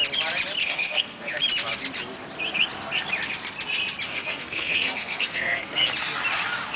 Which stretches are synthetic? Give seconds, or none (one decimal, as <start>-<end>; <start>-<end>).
0.6-1.3; 4.1-5.9